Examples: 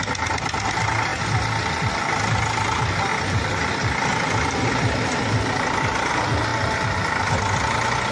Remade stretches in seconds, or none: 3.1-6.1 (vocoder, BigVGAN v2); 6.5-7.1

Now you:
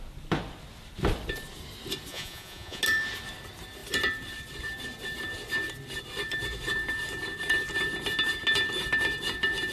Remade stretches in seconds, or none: 2.1-2.8 (vocoder, Vocos)

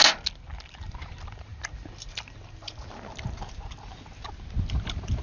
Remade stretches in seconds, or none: none

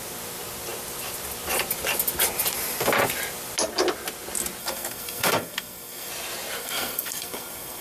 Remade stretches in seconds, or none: 4.6-6.1 (codec, SNAC); 6.6-7.8

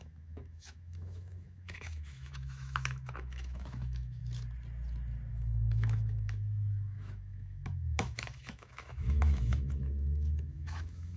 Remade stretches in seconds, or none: 0.0-4.2 (autoencoder, DAC-VAE); 5.3-11.2

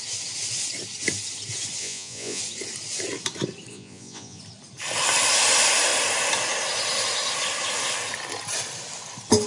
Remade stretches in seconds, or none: 1.8-2.4 (vocoder, Vocos); 3.7-4.4

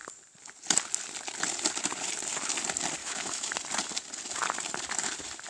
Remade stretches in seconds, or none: 3.0-3.5 (autoencoder, DAC-VAE)